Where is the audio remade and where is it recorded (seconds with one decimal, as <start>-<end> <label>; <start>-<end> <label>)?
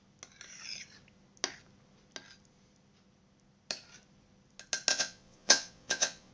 0.0-4.9 recorded; 4.9-6.3 remade